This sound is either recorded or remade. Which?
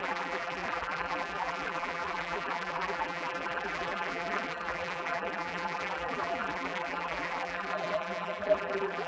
remade